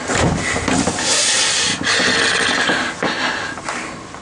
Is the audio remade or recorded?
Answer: recorded